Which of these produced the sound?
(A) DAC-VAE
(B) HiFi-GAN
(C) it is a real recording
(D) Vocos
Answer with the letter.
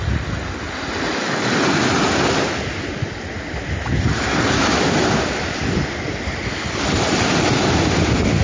C